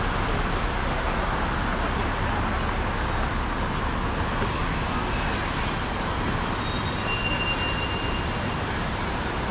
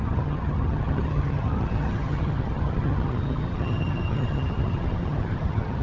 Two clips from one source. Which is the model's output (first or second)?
second